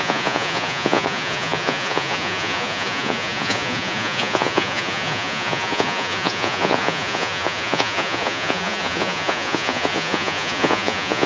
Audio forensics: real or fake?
fake